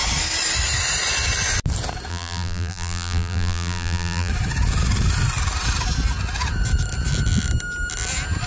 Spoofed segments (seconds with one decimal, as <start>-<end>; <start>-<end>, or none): 2.1-4.3